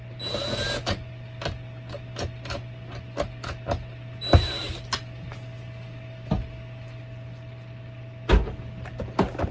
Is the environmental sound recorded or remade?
recorded